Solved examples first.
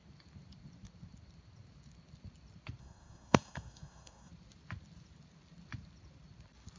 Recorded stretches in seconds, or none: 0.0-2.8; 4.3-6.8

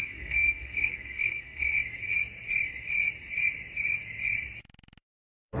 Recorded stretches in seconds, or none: 1.8-5.6

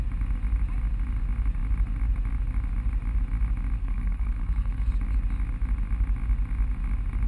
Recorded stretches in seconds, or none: 0.0-3.8; 4.9-7.3

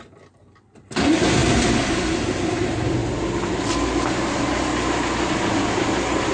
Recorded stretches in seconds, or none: 0.0-6.3

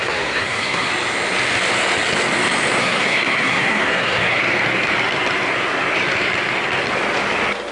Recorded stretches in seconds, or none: 0.9-2.8; 4.4-7.7

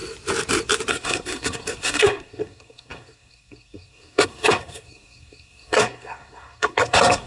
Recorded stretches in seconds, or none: 0.0-0.9

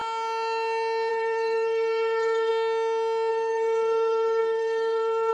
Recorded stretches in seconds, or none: 0.0-1.1; 2.5-3.3

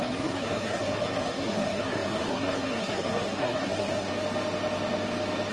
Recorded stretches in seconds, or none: 4.1-5.5